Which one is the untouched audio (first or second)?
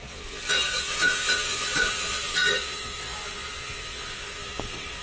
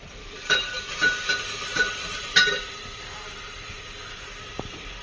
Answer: second